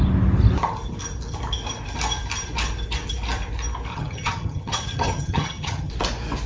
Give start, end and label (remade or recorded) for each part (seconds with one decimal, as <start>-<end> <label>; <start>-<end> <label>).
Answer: 0.0-3.9 recorded; 3.9-5.9 remade; 5.9-6.5 recorded